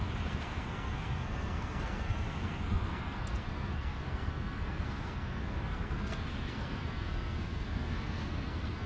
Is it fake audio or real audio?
fake